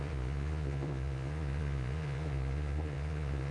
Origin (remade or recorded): remade